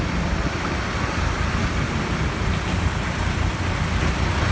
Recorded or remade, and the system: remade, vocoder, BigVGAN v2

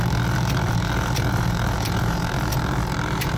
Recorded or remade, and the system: remade, vocoder, BigVGAN v2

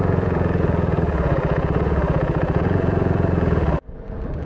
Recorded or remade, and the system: remade, vocoder, BigVGAN v2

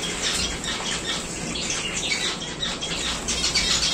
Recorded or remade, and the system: recorded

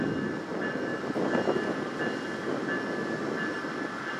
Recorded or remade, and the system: recorded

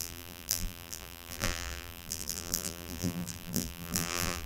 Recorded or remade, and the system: remade, vocoder, BigVGAN v2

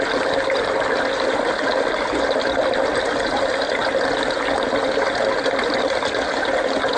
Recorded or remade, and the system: recorded